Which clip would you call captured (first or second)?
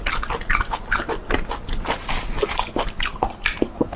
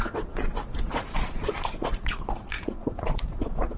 first